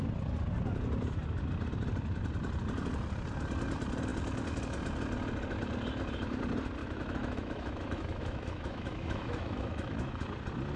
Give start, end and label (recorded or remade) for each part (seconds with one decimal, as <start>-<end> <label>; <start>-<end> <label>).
0.0-6.8 recorded; 6.8-10.2 remade; 10.2-10.8 recorded